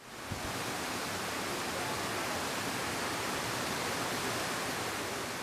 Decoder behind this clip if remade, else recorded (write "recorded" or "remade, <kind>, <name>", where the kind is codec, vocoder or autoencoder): recorded